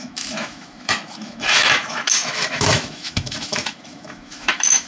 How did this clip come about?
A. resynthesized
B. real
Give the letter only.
A